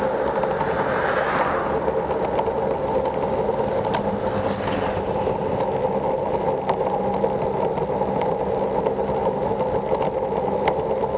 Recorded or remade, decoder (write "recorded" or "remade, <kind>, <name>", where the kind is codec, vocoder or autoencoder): recorded